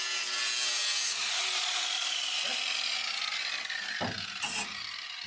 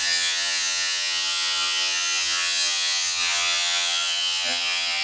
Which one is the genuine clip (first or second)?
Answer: first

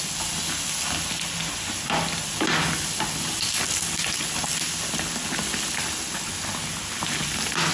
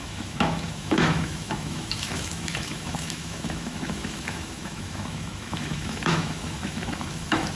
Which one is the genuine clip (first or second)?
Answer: first